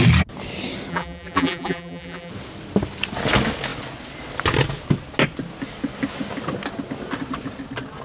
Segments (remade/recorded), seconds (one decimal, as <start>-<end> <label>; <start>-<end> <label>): 0.0-0.9 recorded; 0.9-2.3 remade; 2.3-8.0 recorded